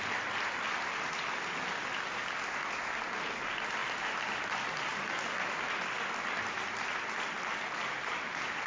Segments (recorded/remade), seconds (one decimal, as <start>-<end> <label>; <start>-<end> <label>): 0.0-8.7 recorded